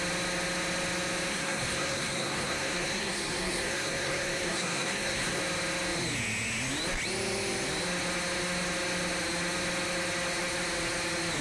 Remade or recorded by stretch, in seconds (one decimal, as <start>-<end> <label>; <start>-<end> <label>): 0.0-1.3 recorded; 1.3-5.4 remade; 5.4-11.4 recorded